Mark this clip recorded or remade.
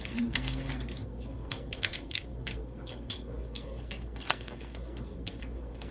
remade